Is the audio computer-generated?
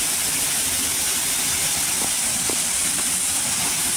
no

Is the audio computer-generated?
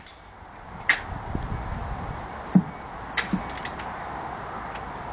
no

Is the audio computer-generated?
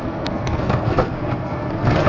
yes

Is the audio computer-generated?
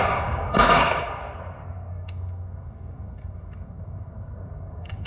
yes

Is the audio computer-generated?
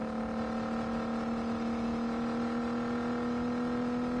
no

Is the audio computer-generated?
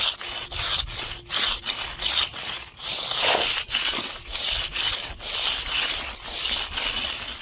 no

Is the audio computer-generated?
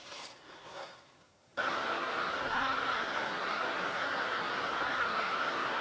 yes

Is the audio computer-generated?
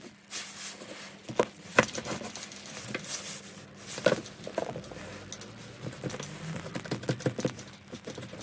no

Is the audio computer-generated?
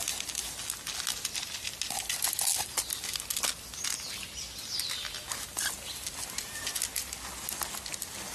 no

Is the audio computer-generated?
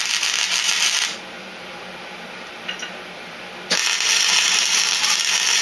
no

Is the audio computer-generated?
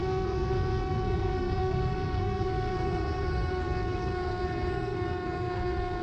yes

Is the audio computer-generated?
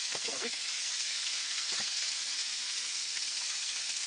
yes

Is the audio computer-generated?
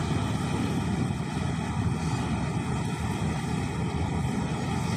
no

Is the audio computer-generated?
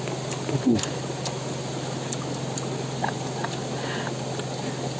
no